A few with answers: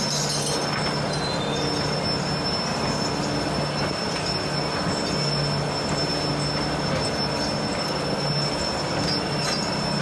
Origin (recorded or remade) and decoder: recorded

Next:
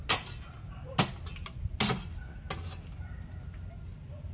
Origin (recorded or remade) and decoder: recorded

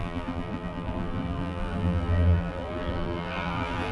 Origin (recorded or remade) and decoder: remade, vocoder, BigVGAN v2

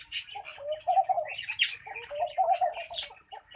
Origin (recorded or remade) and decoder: recorded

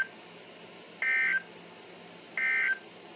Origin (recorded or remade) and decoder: recorded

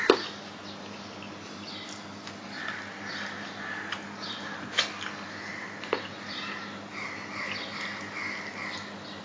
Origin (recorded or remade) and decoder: recorded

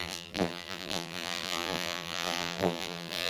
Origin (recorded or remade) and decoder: remade, vocoder, BigVGAN v2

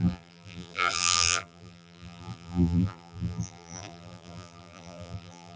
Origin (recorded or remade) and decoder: remade, vocoder, BigVGAN v2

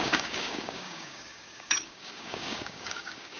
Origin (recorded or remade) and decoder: remade, codec, DAC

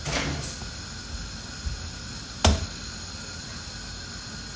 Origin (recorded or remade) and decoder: recorded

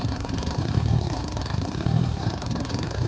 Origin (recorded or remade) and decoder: remade, codec, SNAC